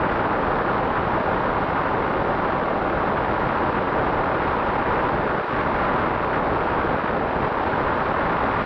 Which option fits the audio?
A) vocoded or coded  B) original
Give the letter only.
B